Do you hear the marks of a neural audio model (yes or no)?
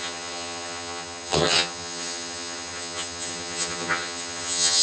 yes